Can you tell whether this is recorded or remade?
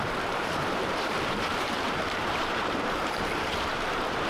remade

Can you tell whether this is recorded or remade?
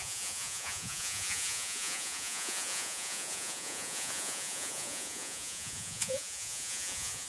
remade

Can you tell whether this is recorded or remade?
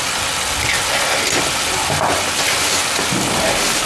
recorded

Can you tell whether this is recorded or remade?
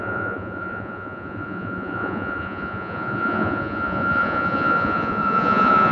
remade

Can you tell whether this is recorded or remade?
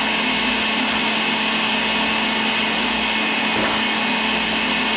recorded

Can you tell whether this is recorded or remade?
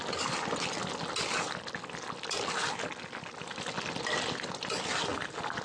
recorded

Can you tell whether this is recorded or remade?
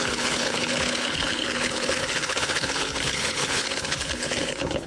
remade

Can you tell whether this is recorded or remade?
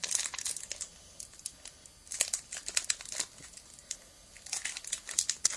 recorded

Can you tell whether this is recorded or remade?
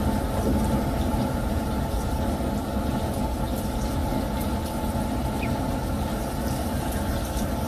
recorded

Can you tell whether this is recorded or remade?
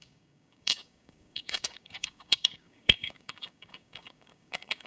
remade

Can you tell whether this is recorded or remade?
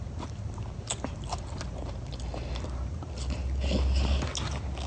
recorded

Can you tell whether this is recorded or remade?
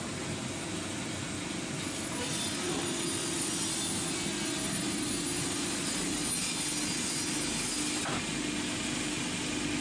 recorded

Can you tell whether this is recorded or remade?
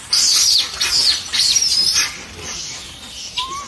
remade